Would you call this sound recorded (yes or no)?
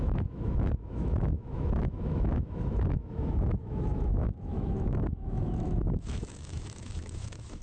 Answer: no